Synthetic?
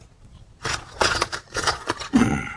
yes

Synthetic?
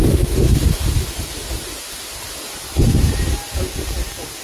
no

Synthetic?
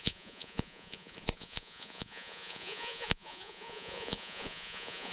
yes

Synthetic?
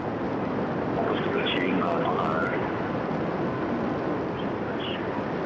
no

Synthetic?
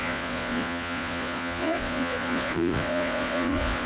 yes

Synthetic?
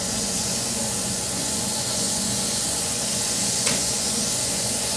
yes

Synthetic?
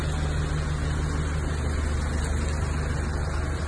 no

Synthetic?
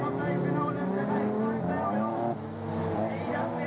no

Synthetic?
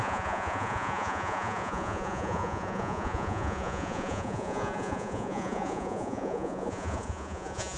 yes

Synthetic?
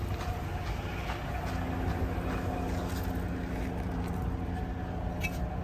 no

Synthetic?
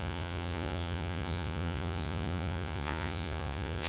yes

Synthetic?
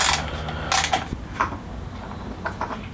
no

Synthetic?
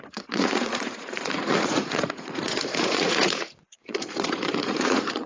yes